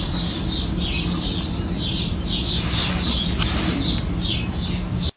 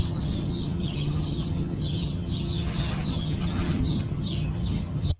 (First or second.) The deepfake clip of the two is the second